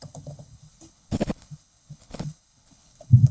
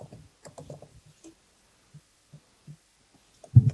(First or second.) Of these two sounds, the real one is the second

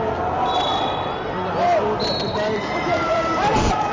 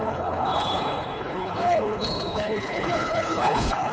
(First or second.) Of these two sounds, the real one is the first